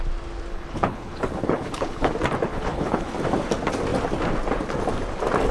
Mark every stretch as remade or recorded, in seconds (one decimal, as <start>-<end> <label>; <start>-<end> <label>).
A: 0.0-0.5 recorded; 0.5-2.1 remade; 2.1-2.5 recorded; 2.5-3.1 remade; 3.1-5.5 recorded